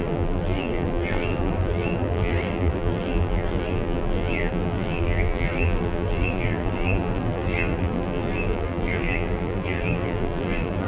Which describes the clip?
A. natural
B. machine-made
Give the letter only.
B